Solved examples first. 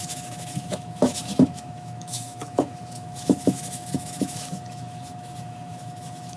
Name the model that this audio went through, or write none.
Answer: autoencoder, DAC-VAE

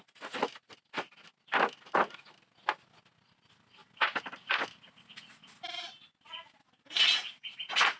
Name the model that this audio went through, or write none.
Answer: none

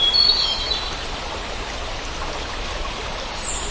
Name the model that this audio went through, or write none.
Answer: none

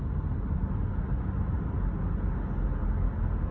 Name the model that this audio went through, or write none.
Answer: none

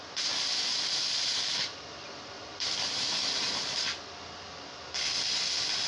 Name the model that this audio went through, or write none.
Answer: vocoder, BigVGAN v2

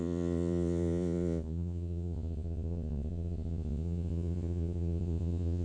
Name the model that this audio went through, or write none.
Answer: vocoder, Vocos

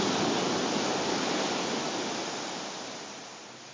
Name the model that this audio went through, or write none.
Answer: none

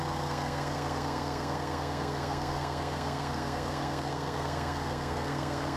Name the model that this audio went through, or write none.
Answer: codec, SNAC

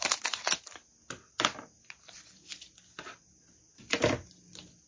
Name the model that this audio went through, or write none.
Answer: none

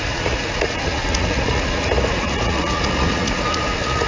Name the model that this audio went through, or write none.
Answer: vocoder, Vocos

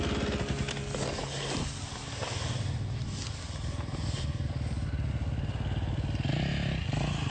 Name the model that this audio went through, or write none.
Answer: none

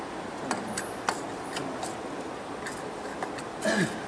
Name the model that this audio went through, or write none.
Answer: none